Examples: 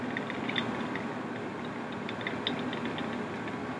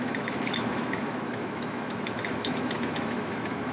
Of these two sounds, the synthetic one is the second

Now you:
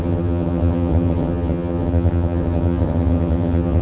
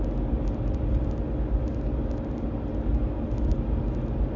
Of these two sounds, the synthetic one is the first